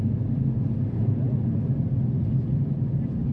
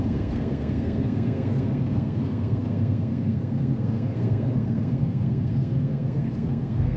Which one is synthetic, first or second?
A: second